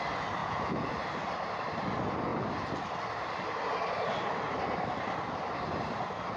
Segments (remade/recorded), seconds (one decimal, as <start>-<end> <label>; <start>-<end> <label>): 0.0-0.4 recorded; 0.4-0.9 remade; 0.9-6.4 recorded